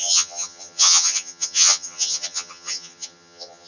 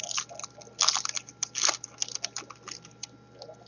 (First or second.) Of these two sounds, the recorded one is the second